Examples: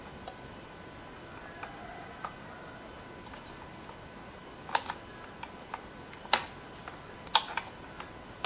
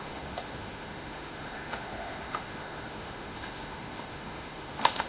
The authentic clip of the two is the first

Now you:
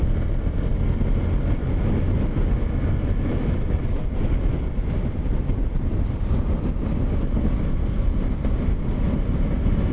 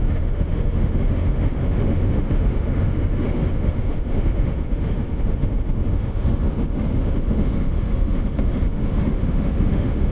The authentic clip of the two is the first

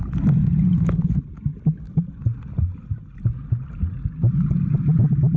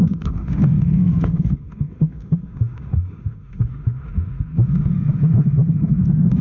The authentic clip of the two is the first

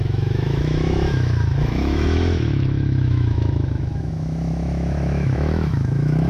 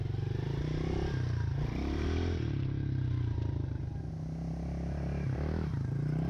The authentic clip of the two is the second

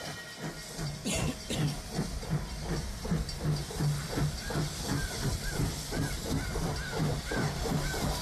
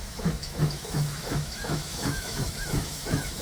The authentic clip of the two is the first